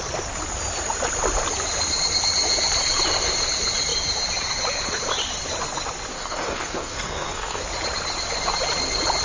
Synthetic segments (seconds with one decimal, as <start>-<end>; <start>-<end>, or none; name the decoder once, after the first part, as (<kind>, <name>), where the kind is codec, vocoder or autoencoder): 6.1-7.6 (codec, SNAC)

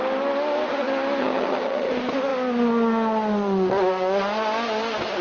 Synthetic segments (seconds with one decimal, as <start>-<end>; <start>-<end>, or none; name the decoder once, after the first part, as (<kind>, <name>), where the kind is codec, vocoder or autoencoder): 1.2-1.9 (vocoder, HiFi-GAN)

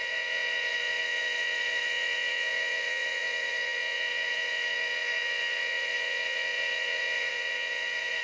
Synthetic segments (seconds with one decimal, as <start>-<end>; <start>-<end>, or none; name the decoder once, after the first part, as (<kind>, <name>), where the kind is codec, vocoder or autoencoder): 0.0-8.2 (vocoder, WaveNeXt)

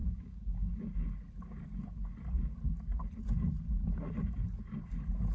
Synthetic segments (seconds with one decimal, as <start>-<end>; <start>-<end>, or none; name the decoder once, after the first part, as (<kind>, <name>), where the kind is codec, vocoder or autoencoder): 0.0-0.7 (codec, DAC)

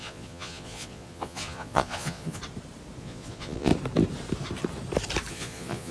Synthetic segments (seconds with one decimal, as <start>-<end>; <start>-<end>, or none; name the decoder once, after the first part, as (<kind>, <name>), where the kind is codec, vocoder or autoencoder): 0.0-2.4 (vocoder, Vocos); 3.0-3.7; 5.3-5.9

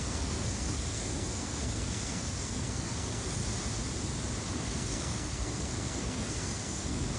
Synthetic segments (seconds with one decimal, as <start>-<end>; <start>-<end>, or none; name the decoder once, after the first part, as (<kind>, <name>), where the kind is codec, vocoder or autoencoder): 0.0-3.4 (codec, SNAC); 4.5-7.2

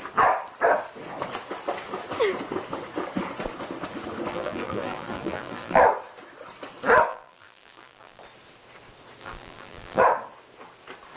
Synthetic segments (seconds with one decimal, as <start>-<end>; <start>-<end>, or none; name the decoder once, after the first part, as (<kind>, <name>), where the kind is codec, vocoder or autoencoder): 4.3-5.8 (vocoder, BigVGAN v2); 7.1-8.2; 9.2-10.0

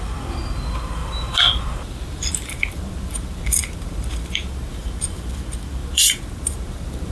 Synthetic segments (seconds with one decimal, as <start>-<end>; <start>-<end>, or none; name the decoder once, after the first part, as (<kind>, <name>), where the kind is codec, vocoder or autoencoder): 1.0-5.3 (vocoder, BigVGAN v2); 5.8-7.1